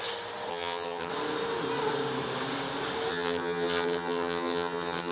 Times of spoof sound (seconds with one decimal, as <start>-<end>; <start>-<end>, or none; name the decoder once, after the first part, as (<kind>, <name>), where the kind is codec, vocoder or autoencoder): 0.5-1.1 (vocoder, HiFi-GAN); 3.1-5.1